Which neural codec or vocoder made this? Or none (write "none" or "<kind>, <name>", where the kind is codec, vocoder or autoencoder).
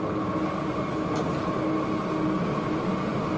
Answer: none